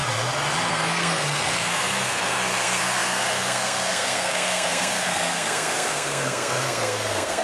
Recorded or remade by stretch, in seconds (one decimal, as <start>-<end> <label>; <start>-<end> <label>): 0.0-0.7 recorded; 0.7-7.4 remade